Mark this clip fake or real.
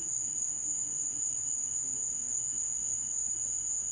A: fake